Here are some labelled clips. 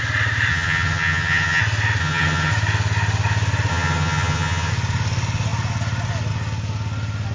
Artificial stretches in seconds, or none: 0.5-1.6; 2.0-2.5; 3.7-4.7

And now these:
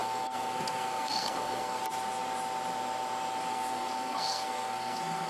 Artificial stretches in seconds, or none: 0.0-1.8; 3.5-5.3